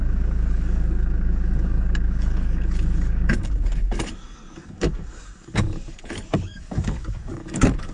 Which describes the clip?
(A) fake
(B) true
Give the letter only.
A